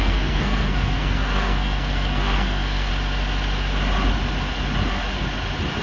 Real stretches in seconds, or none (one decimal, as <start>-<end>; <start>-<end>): 2.9-5.8